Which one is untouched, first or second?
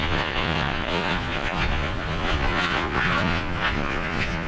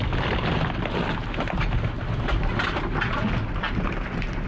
second